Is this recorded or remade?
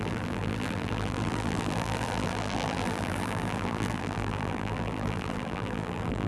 remade